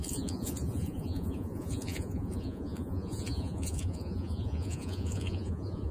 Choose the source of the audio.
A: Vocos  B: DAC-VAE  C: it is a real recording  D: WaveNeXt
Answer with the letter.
A